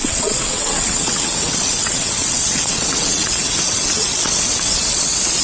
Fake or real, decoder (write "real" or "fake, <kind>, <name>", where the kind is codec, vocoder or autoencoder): fake, vocoder, WaveNeXt